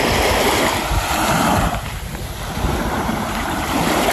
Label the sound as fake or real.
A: real